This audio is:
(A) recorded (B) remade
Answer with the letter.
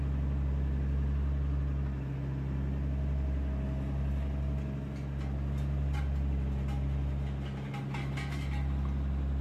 A